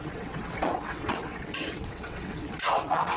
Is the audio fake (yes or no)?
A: yes